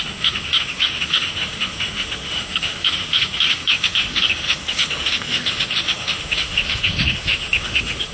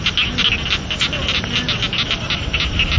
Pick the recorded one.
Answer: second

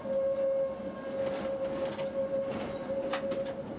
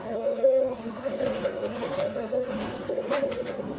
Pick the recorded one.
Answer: first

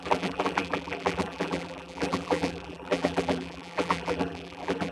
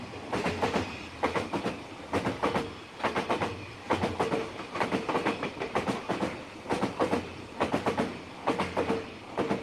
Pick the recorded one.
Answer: second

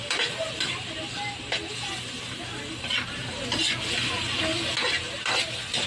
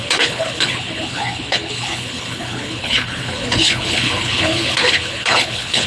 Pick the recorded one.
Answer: first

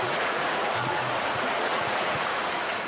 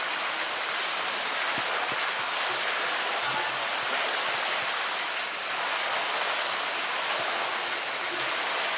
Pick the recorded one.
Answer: second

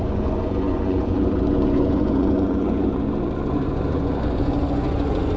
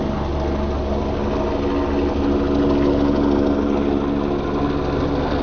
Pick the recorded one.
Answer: second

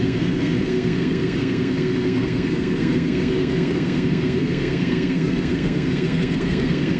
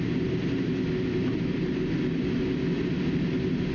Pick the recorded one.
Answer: second